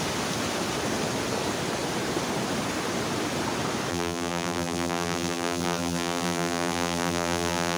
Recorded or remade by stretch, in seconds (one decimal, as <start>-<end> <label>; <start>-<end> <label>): 0.0-3.9 recorded; 3.9-7.8 remade